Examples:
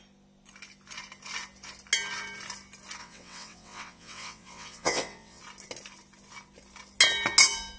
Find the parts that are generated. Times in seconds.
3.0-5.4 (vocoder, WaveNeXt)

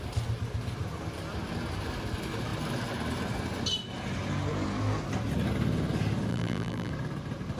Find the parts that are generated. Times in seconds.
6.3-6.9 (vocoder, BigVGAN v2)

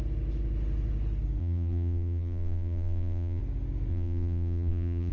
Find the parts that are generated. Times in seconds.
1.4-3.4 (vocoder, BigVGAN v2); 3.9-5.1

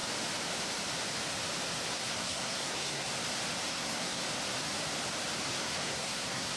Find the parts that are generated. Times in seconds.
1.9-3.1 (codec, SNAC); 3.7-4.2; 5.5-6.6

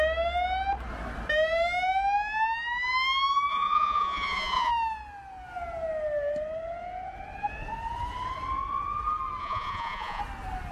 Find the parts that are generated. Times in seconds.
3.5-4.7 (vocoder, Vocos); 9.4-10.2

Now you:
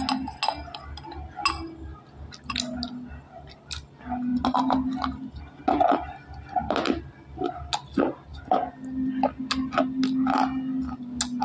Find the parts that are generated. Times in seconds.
none